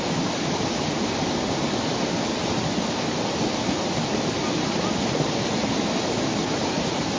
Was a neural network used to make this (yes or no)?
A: no